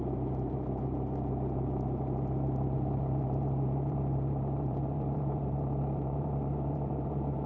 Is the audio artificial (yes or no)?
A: yes